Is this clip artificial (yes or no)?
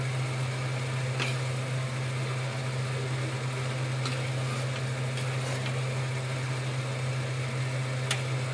no